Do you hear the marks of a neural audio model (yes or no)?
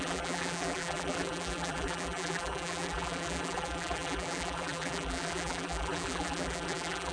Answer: yes